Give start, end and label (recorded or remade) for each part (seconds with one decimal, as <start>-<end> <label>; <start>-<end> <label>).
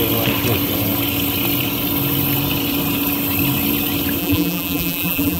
0.0-4.2 recorded; 4.2-5.4 remade